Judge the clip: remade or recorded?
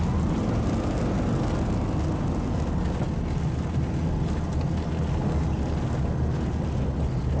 recorded